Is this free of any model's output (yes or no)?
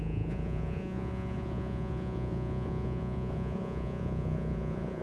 no